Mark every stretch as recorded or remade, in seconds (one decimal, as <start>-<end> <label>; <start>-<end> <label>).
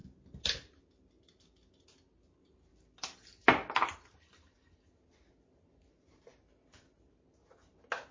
0.0-8.1 recorded